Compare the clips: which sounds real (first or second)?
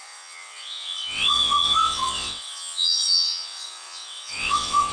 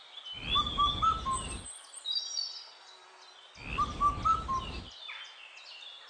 second